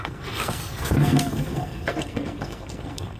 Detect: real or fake fake